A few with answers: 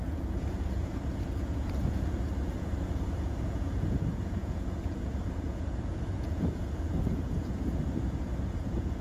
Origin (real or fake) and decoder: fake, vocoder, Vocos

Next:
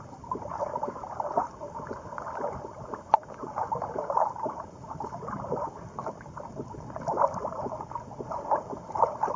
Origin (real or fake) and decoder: real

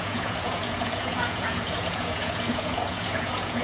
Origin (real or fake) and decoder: fake, vocoder, Vocos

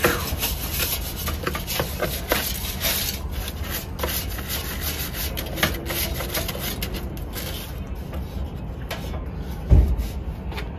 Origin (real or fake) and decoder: real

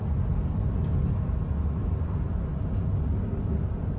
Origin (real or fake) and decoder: real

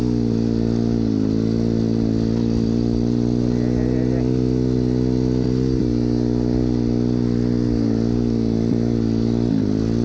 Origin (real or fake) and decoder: real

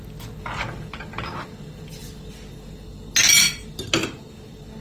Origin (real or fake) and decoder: real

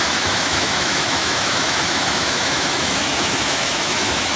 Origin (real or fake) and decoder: fake, autoencoder, DAC-VAE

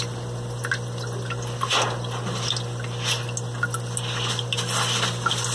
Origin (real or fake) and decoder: real